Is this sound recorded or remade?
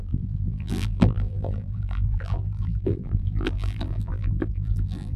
remade